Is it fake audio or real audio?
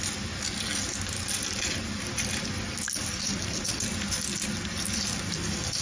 real